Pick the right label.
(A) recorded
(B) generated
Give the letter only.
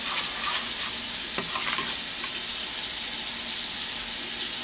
A